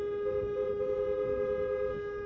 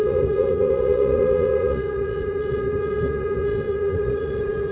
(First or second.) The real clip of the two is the first